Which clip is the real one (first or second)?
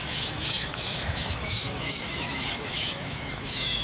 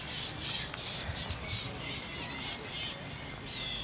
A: second